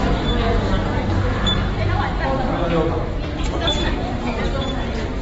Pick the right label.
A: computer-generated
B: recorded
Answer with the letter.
B